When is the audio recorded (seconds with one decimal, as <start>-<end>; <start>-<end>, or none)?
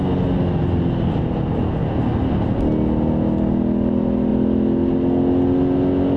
0.0-6.2